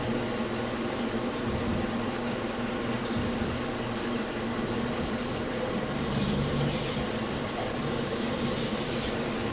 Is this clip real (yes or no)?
no